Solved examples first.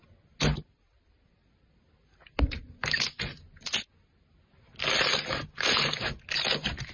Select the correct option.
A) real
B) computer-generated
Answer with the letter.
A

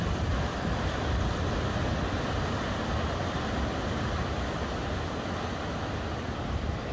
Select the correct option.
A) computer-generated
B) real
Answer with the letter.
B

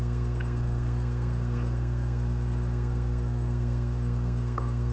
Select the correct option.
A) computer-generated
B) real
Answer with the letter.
A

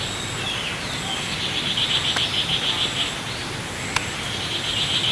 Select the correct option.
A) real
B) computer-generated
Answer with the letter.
A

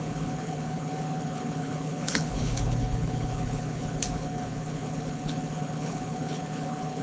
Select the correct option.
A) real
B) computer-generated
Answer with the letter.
B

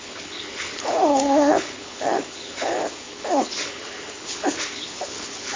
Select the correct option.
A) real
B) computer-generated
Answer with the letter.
B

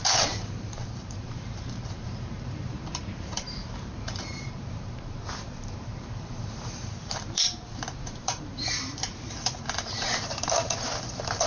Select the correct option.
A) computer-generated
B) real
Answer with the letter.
A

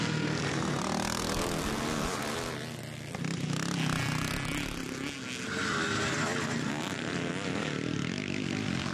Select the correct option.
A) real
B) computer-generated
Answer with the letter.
A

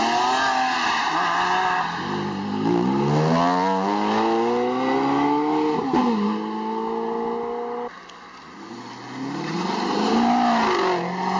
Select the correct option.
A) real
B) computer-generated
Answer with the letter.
A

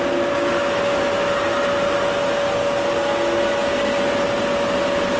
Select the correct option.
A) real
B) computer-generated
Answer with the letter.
A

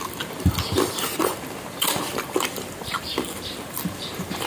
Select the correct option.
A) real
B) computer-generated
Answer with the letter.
B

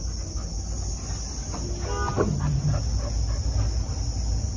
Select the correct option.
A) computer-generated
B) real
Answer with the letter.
B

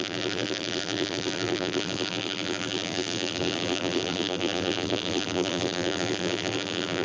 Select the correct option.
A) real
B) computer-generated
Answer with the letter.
B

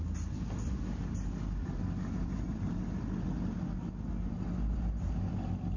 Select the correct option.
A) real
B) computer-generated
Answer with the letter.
A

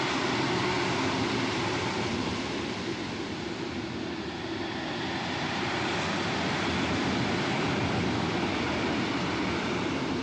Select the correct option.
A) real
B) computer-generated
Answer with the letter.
A